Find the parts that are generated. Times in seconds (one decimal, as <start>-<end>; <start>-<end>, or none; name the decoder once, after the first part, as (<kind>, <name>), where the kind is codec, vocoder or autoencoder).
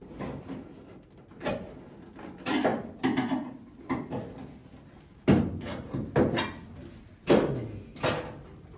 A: none